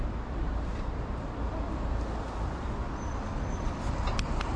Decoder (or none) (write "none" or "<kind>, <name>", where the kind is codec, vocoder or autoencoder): vocoder, BigVGAN v2